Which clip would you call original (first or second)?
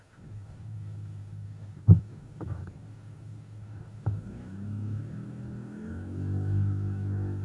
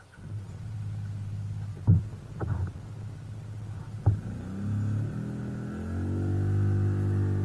second